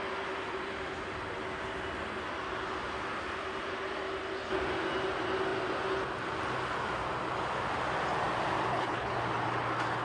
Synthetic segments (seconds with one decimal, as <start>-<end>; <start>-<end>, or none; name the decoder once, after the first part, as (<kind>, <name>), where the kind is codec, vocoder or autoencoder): 8.7-9.2 (codec, HILCodec)